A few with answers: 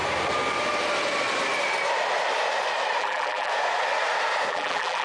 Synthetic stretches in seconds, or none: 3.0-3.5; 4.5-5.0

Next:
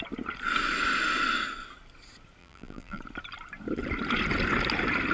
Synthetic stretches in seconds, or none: 2.4-3.0

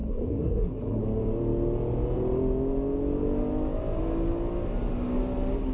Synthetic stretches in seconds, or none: 0.0-1.0

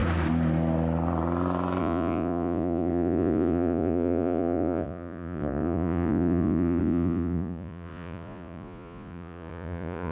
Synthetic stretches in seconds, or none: 1.8-10.1

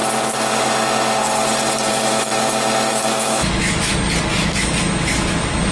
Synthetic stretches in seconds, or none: 1.9-2.3; 2.9-3.9; 4.4-5.7

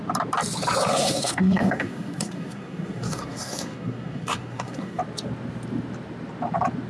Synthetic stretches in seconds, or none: 0.9-5.0